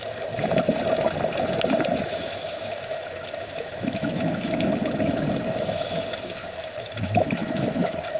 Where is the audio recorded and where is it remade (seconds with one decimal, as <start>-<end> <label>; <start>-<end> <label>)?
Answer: 0.0-1.9 recorded; 1.9-4.5 remade; 4.5-6.4 recorded; 6.4-8.2 remade